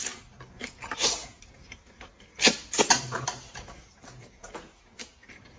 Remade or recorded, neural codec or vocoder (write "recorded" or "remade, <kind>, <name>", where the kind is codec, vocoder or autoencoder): recorded